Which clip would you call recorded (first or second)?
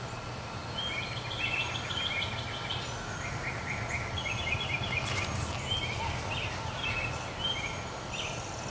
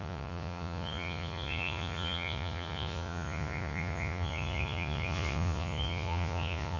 first